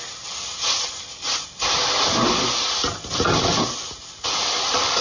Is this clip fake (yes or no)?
no